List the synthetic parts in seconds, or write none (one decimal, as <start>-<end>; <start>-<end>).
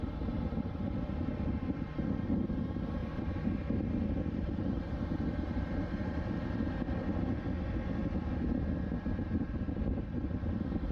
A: 3.0-7.0